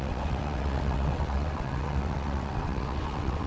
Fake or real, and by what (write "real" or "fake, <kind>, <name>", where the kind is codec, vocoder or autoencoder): fake, vocoder, WaveNeXt